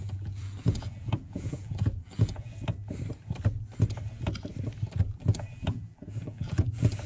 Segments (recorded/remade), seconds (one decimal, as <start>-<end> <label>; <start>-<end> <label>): 0.0-2.5 remade; 2.5-5.0 recorded; 5.0-7.1 remade